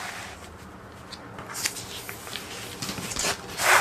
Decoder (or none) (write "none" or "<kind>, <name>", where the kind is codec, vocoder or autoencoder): none